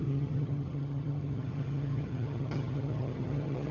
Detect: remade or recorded remade